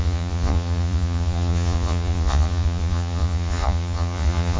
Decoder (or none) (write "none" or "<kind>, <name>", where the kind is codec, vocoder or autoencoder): vocoder, Vocos